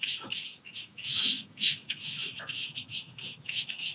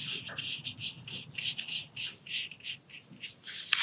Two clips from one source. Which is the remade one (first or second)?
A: first